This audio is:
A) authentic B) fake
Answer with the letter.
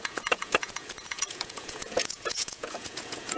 B